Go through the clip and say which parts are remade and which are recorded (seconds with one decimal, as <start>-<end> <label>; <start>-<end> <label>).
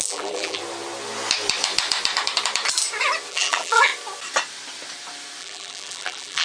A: 0.0-0.6 remade; 0.6-3.3 recorded; 3.3-3.9 remade; 3.9-5.4 recorded; 5.4-6.4 remade